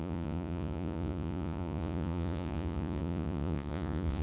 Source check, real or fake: fake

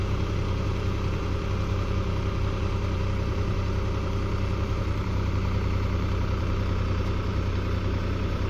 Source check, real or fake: fake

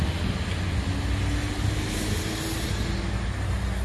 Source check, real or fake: real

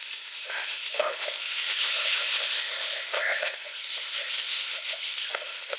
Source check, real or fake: fake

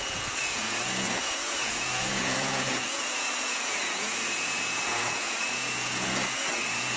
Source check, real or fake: fake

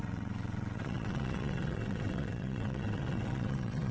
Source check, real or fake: fake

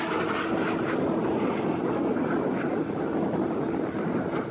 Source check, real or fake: real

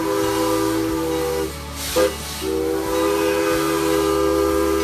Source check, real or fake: real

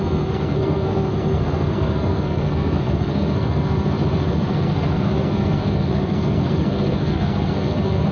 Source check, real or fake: fake